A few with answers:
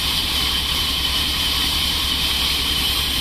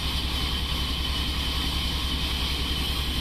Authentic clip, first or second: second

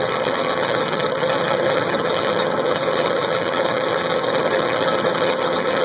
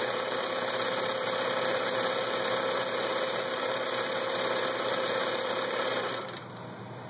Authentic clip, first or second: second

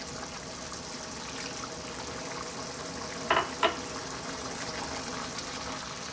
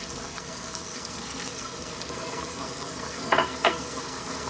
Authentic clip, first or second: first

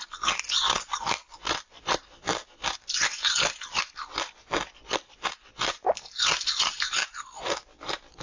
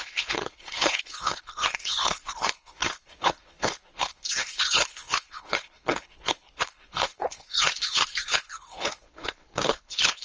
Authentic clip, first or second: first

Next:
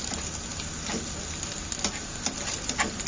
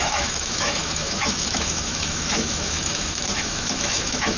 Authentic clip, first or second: first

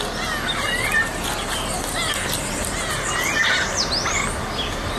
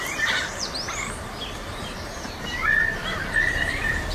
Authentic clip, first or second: first